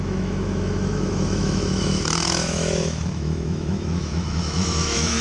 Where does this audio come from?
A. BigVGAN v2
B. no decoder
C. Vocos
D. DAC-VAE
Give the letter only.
D